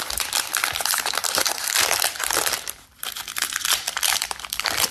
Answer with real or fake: fake